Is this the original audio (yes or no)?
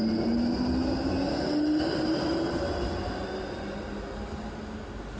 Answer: yes